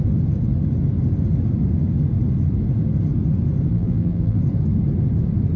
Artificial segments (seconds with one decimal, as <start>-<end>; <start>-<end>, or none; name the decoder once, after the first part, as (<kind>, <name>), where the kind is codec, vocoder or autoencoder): 3.7-4.4 (vocoder, BigVGAN v2)